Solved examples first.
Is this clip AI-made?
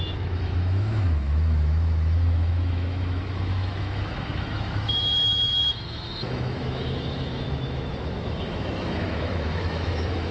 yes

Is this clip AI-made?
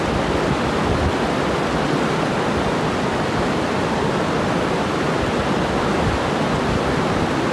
no